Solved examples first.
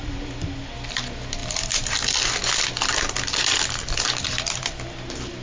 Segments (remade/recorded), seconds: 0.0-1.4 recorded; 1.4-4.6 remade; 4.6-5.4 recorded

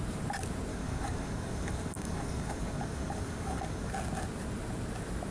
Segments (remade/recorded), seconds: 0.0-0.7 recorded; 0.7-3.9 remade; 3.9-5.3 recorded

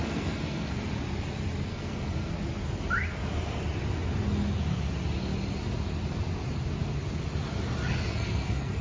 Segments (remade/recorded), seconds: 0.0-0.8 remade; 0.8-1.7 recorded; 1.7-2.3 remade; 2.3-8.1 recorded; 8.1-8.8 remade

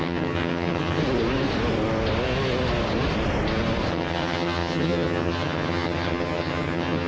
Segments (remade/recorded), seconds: 0.0-1.0 remade; 1.0-3.9 recorded; 3.9-7.1 remade

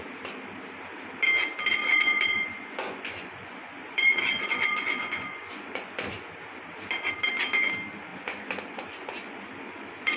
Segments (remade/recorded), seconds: 0.0-1.8 recorded; 1.8-6.3 remade; 6.3-8.1 recorded; 8.1-10.2 remade